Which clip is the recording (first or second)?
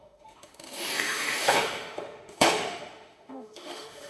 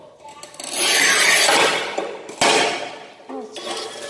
second